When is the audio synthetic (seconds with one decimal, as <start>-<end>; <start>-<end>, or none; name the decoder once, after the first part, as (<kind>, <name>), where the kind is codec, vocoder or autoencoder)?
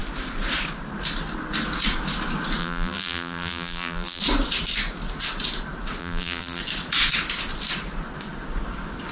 2.6-4.2 (vocoder, BigVGAN v2); 6.0-6.6